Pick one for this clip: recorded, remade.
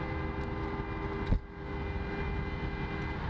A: recorded